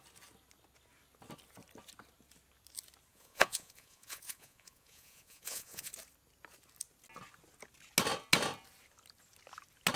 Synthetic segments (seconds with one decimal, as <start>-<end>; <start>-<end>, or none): 3.1-5.9